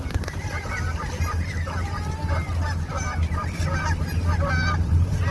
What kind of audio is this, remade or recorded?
recorded